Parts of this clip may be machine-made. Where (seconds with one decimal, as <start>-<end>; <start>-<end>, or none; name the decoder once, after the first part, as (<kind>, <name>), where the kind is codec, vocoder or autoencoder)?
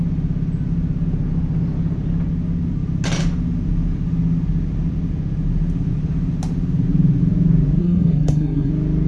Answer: 7.8-8.7 (codec, SNAC)